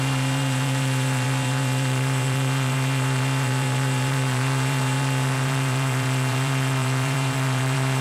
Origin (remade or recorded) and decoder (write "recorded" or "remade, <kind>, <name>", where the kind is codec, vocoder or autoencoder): remade, vocoder, BigVGAN v2